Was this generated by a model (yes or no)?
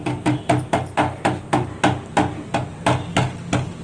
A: no